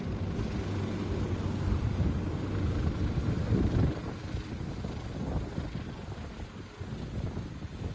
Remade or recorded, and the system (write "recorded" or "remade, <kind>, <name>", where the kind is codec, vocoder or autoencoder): recorded